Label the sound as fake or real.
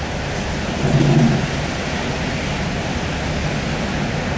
real